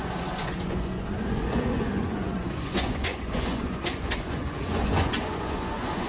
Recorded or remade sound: remade